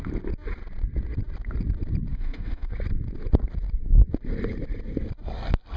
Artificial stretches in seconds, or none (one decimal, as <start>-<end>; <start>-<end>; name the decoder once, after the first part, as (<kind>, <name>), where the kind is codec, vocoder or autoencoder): 2.1-2.7 (autoencoder, DAC-VAE)

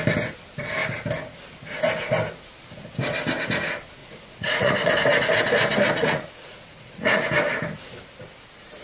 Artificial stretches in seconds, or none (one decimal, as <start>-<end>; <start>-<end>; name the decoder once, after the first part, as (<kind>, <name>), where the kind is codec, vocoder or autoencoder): 4.0-4.9 (vocoder, Vocos); 6.0-7.3

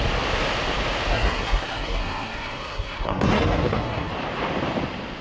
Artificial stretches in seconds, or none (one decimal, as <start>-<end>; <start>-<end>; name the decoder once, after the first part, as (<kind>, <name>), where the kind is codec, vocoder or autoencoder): 1.1-4.1 (codec, SNAC)

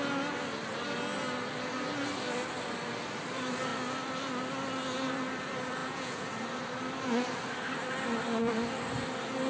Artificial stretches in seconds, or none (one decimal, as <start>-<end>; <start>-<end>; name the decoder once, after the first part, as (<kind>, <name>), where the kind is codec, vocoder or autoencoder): 5.8-6.3 (vocoder, Vocos)

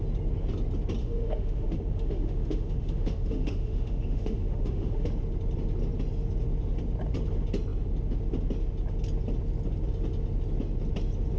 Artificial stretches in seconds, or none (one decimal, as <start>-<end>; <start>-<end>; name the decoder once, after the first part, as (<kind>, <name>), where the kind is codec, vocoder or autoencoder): 1.0-5.1 (autoencoder, DAC-VAE)

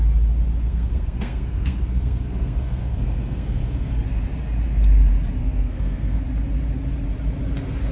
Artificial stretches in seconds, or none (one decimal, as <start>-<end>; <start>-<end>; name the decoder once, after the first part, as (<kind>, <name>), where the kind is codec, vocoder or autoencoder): 0.6-3.9 (codec, SNAC); 5.4-6.2

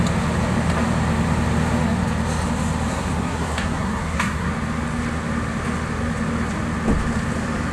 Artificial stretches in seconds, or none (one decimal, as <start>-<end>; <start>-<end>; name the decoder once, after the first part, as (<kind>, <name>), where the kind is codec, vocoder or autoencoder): 2.9-4.5 (codec, SNAC)